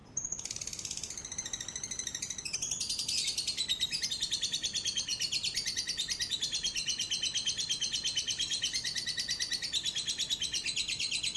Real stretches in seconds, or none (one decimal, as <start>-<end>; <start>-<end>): 0.0-11.4